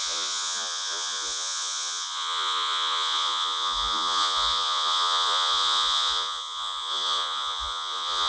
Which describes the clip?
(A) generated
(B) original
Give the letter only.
A